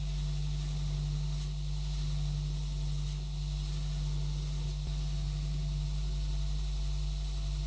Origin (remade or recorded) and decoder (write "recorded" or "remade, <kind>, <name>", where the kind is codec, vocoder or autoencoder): recorded